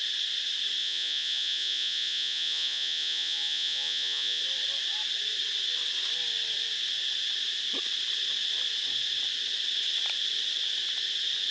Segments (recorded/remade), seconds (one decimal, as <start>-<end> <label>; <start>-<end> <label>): 0.0-0.8 recorded; 0.8-4.4 remade; 4.4-11.5 recorded